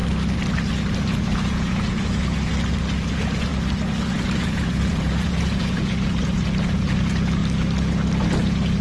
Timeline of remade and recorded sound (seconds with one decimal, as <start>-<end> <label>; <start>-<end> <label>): 0.0-1.0 recorded; 1.0-2.5 remade; 2.5-3.1 recorded; 3.1-3.5 remade; 3.5-4.1 recorded; 4.1-7.4 remade; 7.4-8.4 recorded; 8.4-8.8 remade